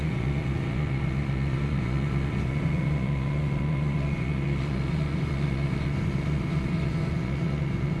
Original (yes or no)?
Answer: no